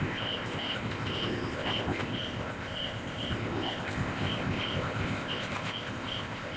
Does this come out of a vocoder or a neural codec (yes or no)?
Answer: yes